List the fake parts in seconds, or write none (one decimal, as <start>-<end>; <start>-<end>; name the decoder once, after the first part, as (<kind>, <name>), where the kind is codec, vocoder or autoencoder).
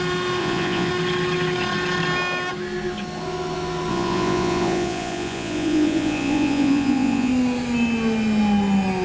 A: 0.4-0.9 (vocoder, Vocos); 3.9-7.3